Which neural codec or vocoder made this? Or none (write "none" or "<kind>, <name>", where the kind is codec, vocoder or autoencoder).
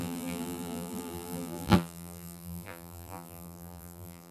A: vocoder, BigVGAN v2